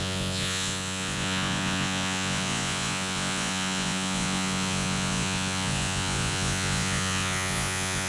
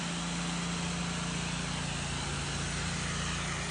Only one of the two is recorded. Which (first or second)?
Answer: second